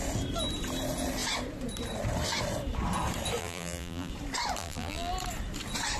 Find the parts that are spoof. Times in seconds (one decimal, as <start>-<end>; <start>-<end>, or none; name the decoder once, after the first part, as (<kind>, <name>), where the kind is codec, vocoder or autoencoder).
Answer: 3.4-4.1 (vocoder, BigVGAN v2); 4.6-5.1